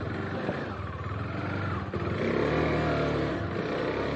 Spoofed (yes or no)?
no